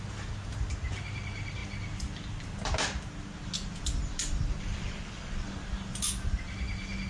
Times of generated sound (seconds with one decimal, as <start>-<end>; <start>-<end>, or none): none